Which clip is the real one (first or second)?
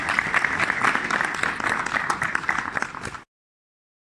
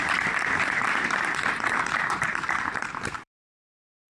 first